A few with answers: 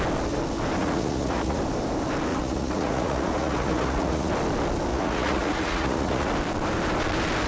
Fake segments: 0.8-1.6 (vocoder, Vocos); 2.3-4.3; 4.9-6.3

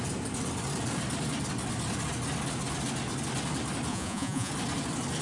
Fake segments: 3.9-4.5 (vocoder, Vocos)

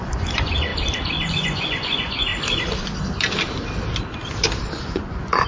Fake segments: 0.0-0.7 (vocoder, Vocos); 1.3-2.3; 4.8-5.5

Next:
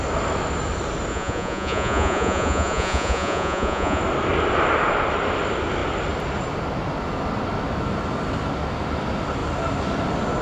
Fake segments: 1.1-4.0 (vocoder, Vocos)

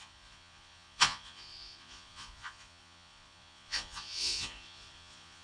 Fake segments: 0.0-5.4 (vocoder, Vocos)

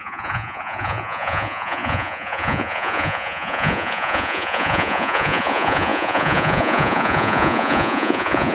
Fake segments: 0.0-8.5 (vocoder, Vocos)